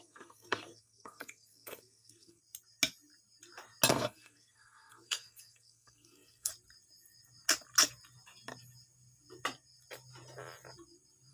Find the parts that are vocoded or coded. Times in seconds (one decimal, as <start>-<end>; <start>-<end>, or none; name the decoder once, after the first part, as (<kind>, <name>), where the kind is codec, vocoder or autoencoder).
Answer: 0.0-2.4 (codec, SNAC); 3.9-6.5